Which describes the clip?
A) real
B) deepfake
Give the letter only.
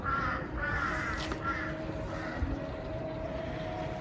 A